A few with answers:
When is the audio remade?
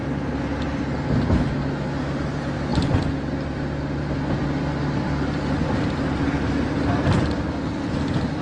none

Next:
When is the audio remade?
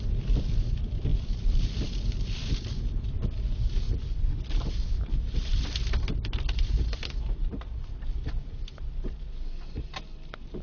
0.0-10.6 (vocoder, BigVGAN v2)